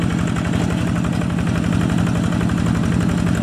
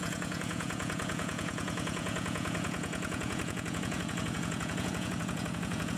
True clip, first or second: first